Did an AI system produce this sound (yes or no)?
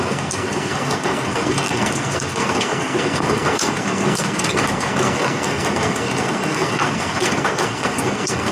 yes